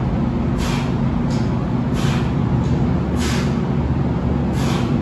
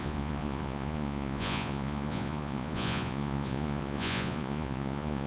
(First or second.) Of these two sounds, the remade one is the second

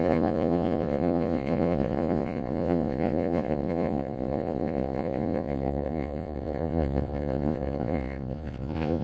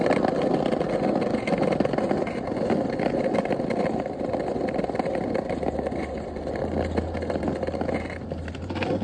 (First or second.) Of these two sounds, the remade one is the first